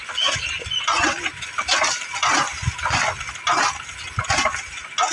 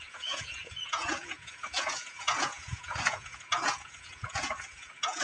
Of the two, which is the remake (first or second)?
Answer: second